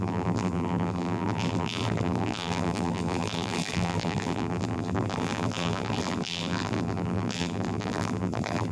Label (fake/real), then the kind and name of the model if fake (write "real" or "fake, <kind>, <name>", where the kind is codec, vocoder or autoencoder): fake, vocoder, BigVGAN v2